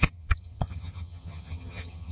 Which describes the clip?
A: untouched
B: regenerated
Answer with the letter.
B